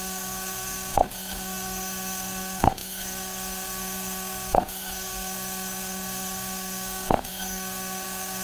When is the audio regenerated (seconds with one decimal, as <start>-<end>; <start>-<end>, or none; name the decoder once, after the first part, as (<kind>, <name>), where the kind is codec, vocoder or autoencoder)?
0.0-8.4 (codec, SNAC)